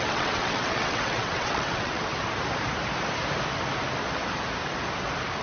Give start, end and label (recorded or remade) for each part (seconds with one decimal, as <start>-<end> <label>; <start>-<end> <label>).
0.0-2.1 remade; 2.1-5.4 recorded